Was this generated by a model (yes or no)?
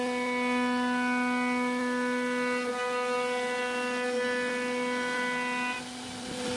no